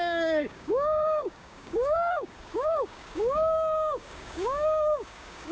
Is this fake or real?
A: fake